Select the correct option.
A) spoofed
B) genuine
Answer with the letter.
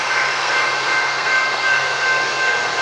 A